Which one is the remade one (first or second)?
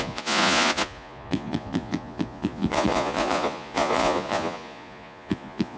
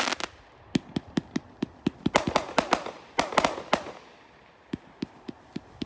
first